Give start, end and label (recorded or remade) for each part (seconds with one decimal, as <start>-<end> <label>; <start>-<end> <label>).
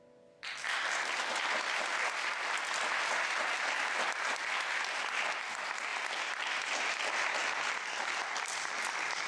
0.0-5.9 recorded; 5.9-7.3 remade; 7.3-9.3 recorded